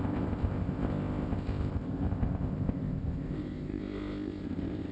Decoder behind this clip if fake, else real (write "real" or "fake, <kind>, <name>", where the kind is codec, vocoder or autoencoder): fake, codec, ZipCodec